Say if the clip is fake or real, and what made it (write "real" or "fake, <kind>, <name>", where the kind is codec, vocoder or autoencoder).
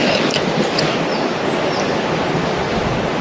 real